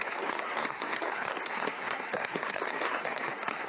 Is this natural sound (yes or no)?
no